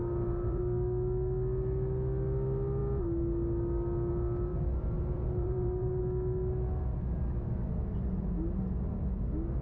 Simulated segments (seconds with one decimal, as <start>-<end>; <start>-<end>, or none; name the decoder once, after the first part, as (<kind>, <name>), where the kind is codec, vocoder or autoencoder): 0.0-0.6 (vocoder, BigVGAN v2); 4.5-6.0